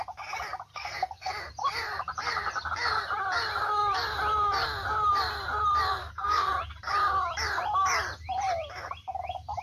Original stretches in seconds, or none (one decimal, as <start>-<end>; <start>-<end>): 0.0-0.7; 1.3-6.0; 6.5-9.6